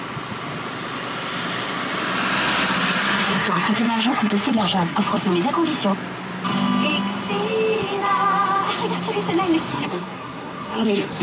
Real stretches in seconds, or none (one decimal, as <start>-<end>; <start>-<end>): 0.0-3.0; 5.0-9.7